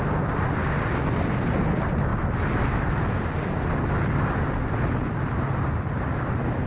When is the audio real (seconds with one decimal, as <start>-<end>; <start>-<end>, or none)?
0.0-6.7